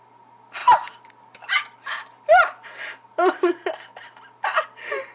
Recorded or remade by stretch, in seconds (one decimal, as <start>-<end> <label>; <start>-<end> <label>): 0.0-5.1 recorded